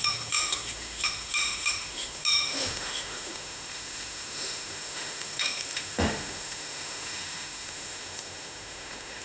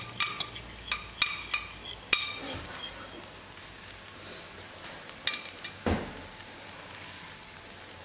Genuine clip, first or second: second